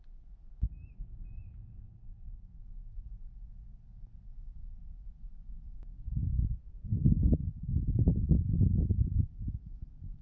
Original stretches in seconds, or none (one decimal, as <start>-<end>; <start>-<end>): 0.0-6.6; 7.5-10.2